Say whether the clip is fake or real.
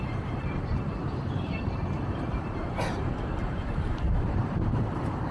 fake